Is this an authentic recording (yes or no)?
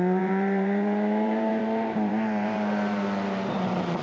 no